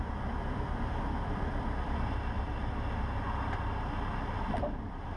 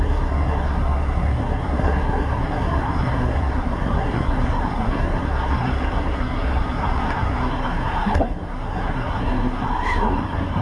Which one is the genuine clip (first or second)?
first